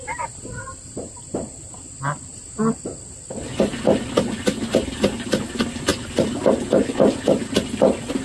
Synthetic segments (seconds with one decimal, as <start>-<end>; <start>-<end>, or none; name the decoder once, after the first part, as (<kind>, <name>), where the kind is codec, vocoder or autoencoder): none